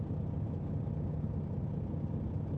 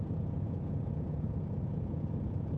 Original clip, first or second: first